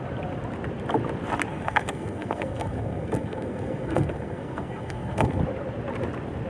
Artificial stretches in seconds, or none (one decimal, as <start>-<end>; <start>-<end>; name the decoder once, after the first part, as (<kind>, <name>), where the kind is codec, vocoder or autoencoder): 1.5-5.4 (codec, SNAC)